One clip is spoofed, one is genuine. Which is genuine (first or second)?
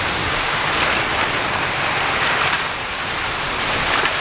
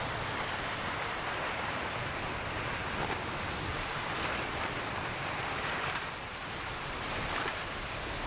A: first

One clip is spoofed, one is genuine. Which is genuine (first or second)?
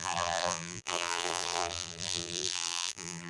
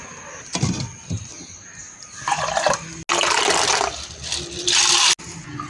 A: second